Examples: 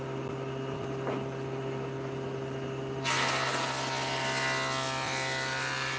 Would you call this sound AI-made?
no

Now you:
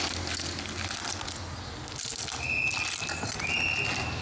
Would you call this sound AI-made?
no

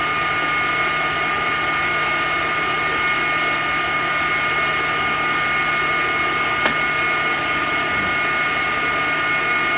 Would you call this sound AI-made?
no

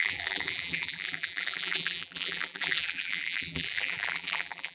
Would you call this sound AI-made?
yes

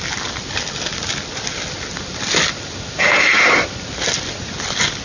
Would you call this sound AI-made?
no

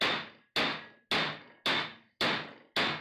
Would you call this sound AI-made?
no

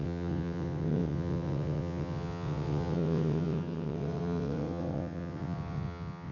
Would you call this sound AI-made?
yes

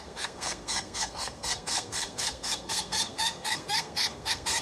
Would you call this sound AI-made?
yes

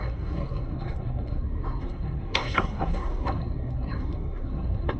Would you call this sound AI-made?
yes